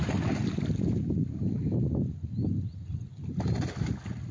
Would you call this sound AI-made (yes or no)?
no